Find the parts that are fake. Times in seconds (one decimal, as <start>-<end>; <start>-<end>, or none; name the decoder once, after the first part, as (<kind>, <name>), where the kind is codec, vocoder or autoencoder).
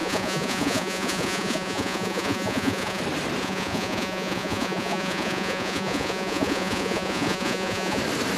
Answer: 0.0-3.0 (vocoder, Vocos); 3.4-8.0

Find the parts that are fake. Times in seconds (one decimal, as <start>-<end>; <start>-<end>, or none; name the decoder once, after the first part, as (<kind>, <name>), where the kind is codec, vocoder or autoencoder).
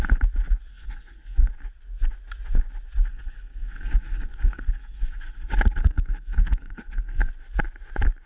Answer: 0.7-1.5 (codec, SNAC); 3.1-7.3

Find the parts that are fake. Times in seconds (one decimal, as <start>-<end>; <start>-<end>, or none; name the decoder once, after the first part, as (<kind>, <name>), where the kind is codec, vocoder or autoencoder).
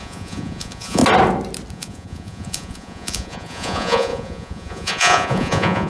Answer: 0.0-1.0 (vocoder, Vocos); 1.7-5.9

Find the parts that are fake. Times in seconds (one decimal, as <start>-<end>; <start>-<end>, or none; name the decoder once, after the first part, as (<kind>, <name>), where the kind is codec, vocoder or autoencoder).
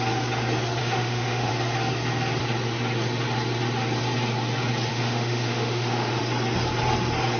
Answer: 0.8-1.5 (autoencoder, DAC-VAE); 4.9-6.2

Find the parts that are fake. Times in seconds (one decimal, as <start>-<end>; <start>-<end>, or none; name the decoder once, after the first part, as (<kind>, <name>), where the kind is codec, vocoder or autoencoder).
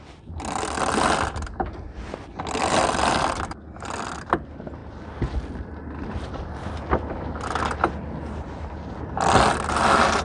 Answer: none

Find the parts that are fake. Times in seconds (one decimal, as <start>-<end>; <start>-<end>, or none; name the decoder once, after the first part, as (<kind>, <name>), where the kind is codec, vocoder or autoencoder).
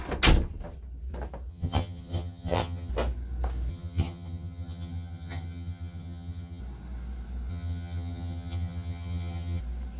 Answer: 1.5-2.9 (vocoder, HiFi-GAN); 3.7-6.6; 7.5-9.6